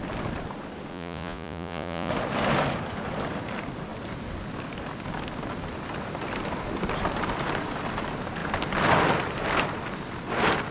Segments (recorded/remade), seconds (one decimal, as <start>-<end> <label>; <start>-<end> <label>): 0.0-0.9 recorded; 0.9-2.1 remade; 2.1-10.7 recorded